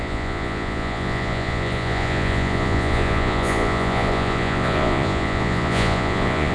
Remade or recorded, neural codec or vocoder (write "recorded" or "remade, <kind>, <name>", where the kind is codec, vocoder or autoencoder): remade, vocoder, Vocos